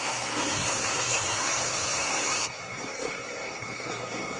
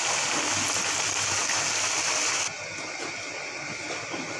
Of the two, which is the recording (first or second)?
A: second